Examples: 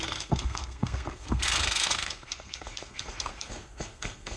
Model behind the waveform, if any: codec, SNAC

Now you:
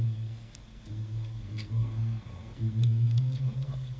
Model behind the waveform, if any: codec, SNAC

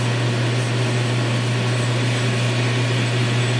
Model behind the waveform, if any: none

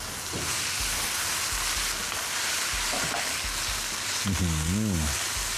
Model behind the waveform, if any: none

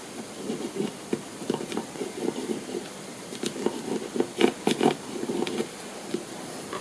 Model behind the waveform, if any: none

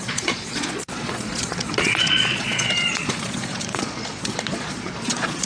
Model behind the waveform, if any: vocoder, Vocos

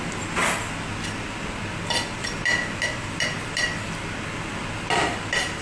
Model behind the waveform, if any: none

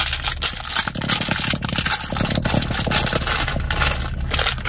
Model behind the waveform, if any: none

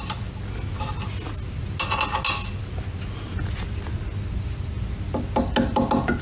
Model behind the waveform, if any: none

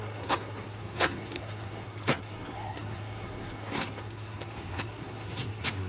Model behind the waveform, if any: codec, SNAC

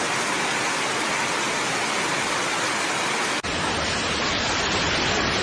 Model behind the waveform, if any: none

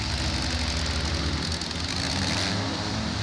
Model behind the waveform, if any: none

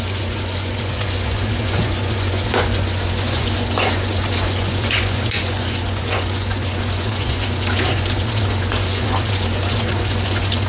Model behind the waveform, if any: vocoder, Vocos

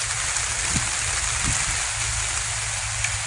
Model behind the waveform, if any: none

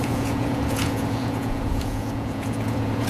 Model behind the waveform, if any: vocoder, Vocos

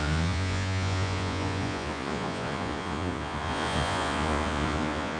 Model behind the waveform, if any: vocoder, Vocos